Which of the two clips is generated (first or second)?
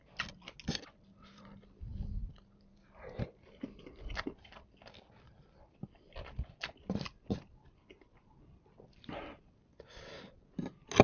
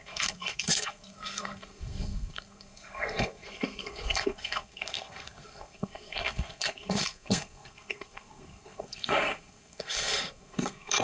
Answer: second